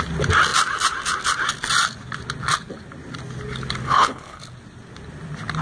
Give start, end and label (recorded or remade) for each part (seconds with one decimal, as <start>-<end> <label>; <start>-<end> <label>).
0.0-3.8 recorded; 3.8-4.4 remade; 4.4-5.6 recorded